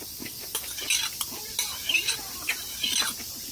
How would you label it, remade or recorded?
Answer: recorded